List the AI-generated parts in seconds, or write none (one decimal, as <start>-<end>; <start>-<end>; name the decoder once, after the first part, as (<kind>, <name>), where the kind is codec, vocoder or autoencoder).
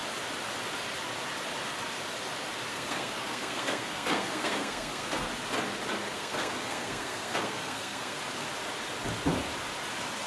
2.7-5.3 (codec, SNAC); 6.1-8.2